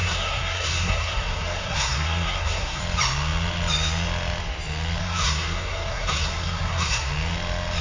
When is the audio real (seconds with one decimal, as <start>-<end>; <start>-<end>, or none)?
2.8-5.0; 7.1-7.8